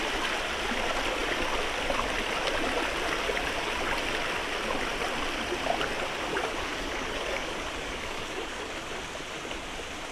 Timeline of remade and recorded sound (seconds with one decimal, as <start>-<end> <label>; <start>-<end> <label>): 0.0-6.3 recorded; 6.3-8.7 remade; 8.7-10.1 recorded